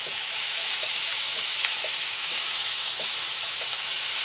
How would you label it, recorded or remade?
remade